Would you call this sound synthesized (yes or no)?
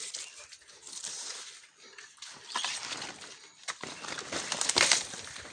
yes